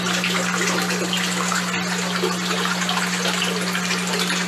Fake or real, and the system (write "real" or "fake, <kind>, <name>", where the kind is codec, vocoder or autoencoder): real